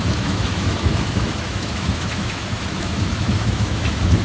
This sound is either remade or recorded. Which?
remade